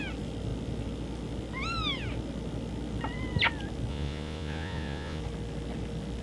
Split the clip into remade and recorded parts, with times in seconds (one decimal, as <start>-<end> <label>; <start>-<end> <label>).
0.0-3.9 recorded; 3.9-5.2 remade; 5.2-6.2 recorded